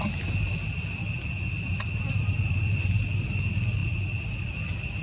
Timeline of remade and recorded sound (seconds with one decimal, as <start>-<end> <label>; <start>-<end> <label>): 0.0-5.0 recorded